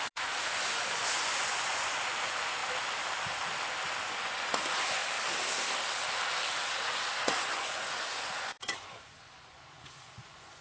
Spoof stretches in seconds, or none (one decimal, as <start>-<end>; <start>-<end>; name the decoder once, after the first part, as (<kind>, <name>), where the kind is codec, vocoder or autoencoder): 0.0-2.6 (vocoder, Vocos); 4.0-5.0; 6.9-10.6